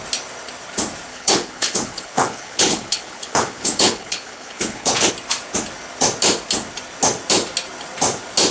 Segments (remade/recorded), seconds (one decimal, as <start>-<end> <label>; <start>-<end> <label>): 0.0-1.1 recorded; 1.1-5.1 remade; 5.1-8.5 recorded